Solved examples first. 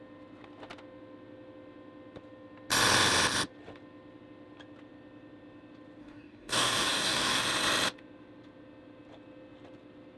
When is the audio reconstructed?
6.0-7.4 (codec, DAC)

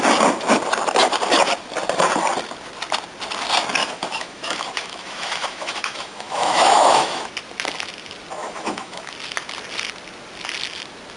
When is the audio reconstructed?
3.8-7.3 (autoencoder, DAC-VAE); 8.4-9.1

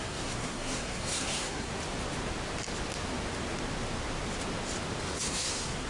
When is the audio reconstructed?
0.0-1.7 (codec, SNAC); 5.2-5.9

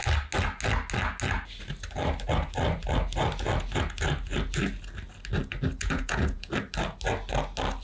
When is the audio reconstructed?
5.8-6.5 (vocoder, Vocos)

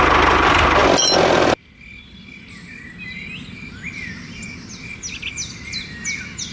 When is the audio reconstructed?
none